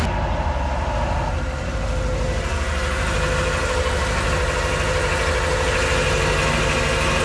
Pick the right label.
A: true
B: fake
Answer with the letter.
A